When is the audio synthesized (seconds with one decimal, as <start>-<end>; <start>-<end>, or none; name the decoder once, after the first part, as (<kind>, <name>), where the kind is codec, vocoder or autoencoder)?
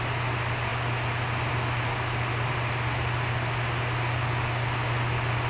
none